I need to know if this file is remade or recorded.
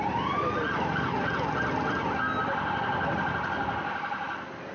recorded